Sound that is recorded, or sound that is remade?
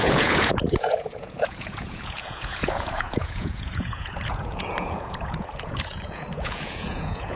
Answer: remade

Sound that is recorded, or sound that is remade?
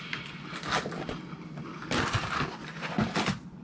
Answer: recorded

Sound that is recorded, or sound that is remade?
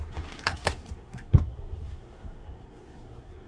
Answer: remade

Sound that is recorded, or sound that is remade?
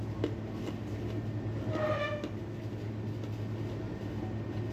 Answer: recorded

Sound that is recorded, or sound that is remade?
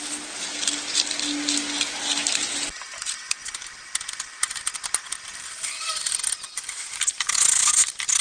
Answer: recorded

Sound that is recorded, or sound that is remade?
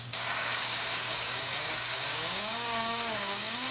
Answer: remade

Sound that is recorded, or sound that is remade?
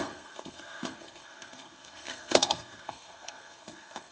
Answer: remade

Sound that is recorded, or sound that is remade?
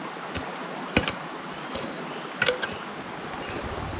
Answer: recorded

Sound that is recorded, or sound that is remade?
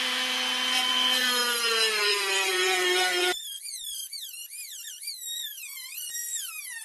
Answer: remade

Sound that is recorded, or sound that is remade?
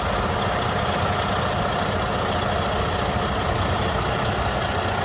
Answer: recorded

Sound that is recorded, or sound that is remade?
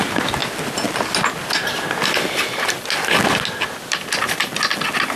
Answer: recorded